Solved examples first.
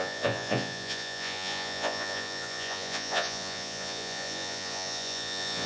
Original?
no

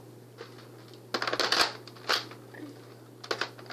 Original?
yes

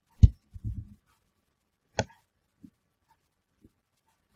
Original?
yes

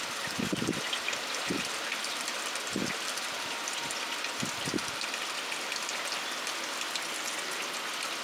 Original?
yes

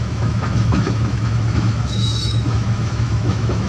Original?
no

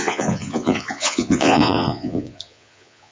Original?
no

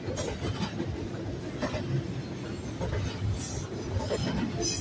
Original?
yes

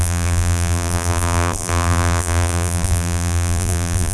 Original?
no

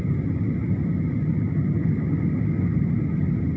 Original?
yes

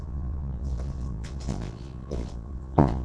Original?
no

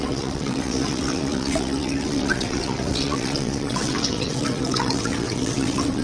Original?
no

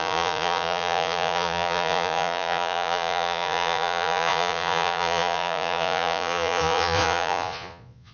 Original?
no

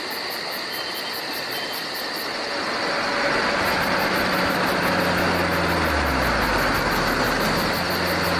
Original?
yes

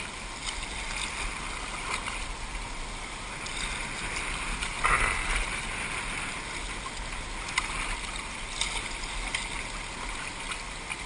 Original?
yes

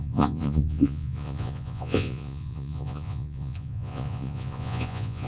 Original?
no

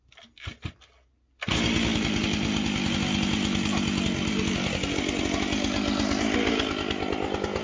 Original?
yes